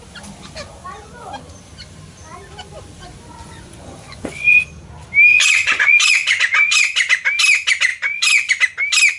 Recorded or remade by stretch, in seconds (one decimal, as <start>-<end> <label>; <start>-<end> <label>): 0.0-3.4 recorded; 3.4-4.7 remade; 4.7-5.3 recorded; 5.3-6.8 remade; 6.8-7.9 recorded; 7.9-8.5 remade; 8.5-9.2 recorded